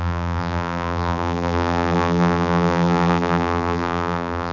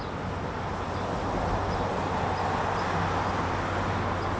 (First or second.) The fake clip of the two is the first